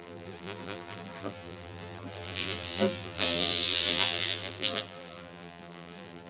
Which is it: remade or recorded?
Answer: remade